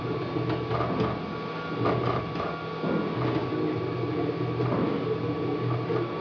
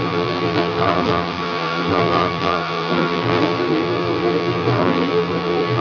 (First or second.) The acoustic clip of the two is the first